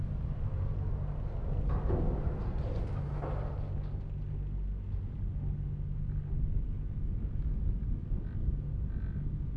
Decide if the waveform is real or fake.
real